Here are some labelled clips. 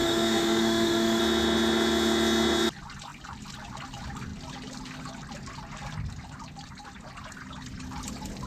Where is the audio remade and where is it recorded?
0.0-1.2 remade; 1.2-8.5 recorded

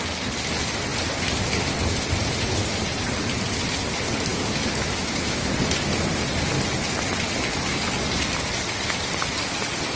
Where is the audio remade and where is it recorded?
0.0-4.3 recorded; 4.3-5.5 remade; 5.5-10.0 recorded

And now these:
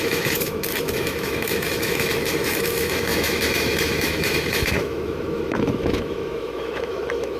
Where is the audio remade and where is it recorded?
0.0-7.4 remade

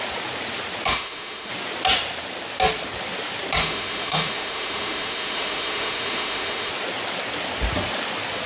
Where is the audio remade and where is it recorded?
0.0-0.9 recorded; 0.9-1.5 remade; 1.5-3.6 recorded; 3.6-6.7 remade; 6.7-8.5 recorded

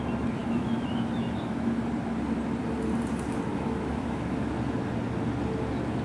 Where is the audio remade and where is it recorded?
0.0-0.4 recorded; 0.4-1.8 remade; 1.8-3.5 recorded; 3.5-4.5 remade; 4.5-6.0 recorded

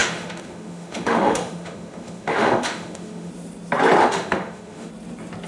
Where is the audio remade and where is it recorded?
0.0-3.3 remade; 3.3-4.0 recorded; 4.0-4.9 remade; 4.9-5.5 recorded

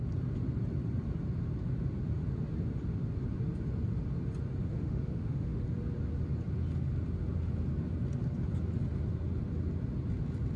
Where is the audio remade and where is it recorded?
0.0-4.6 recorded; 4.6-5.6 remade; 5.6-10.6 recorded